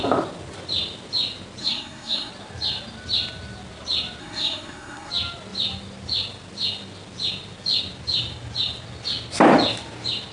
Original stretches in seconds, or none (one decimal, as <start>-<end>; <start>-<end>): 0.0-1.6; 2.3-4.2; 5.1-10.3